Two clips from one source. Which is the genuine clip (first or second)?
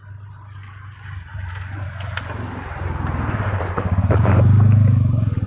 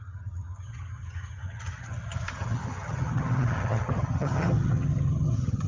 first